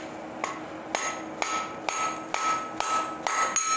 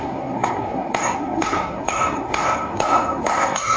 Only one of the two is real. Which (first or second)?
first